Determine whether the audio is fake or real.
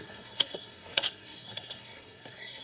fake